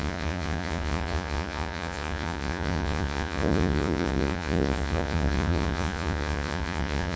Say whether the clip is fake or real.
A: fake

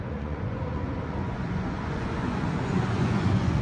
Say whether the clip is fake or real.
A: fake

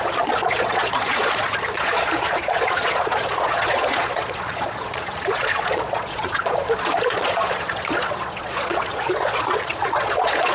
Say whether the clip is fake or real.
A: fake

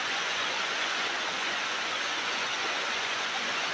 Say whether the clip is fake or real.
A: fake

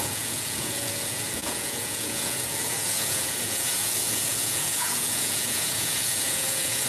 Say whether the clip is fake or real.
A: fake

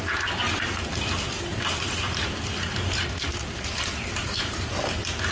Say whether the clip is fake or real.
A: real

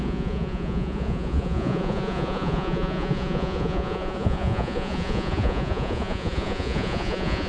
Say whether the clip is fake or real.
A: fake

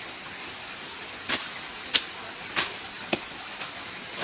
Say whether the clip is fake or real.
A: real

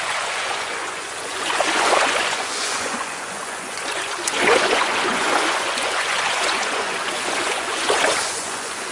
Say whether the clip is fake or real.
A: fake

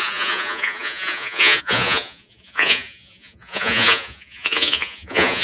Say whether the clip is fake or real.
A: fake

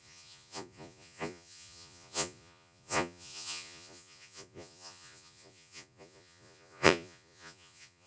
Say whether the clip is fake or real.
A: fake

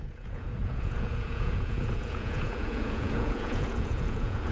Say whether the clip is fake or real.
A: fake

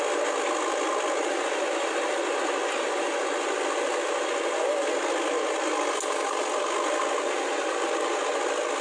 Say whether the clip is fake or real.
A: real